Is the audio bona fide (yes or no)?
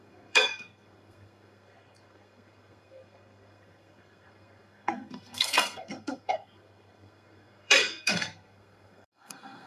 no